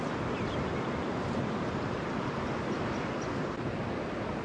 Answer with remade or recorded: recorded